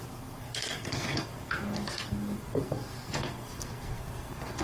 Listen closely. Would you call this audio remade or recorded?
remade